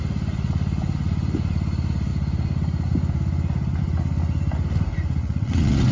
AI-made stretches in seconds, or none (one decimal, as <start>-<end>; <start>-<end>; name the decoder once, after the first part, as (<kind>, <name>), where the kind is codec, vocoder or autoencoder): 5.2-5.9 (vocoder, WaveNeXt)